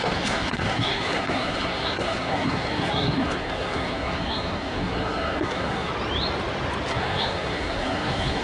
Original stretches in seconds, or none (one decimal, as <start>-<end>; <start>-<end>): 5.9-6.9